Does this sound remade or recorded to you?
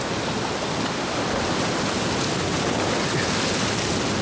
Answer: recorded